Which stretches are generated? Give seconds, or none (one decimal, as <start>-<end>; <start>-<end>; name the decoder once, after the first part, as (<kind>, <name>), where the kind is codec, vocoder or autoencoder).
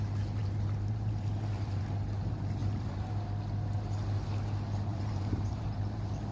0.4-1.8 (vocoder, BigVGAN v2); 2.6-3.1; 4.9-6.3